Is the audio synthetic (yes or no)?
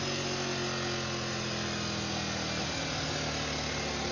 no